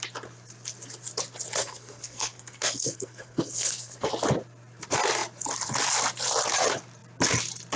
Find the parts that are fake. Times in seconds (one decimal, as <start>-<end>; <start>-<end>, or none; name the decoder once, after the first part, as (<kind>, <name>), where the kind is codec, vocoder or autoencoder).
1.6-4.1 (codec, SNAC)